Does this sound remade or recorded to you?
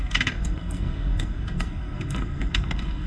remade